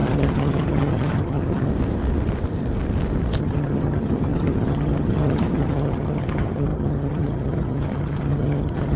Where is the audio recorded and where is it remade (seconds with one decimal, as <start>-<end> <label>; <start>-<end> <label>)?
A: 0.0-1.7 remade; 1.7-3.4 recorded; 3.4-9.0 remade